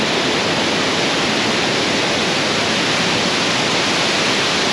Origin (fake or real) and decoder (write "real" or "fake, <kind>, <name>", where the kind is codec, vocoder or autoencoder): real